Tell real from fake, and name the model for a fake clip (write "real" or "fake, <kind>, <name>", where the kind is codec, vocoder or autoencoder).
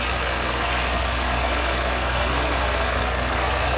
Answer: fake, codec, SNAC